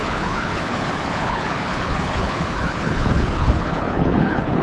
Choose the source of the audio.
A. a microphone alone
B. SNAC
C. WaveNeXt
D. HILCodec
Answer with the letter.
D